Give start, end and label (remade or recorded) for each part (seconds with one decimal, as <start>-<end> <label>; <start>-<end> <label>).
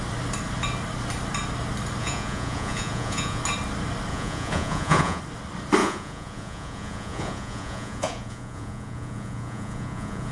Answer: 0.0-2.0 recorded; 2.0-3.4 remade; 3.4-4.1 recorded; 4.1-5.2 remade; 5.2-5.8 recorded; 5.8-10.3 remade